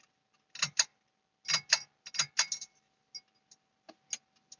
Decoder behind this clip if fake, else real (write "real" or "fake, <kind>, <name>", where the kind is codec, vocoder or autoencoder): real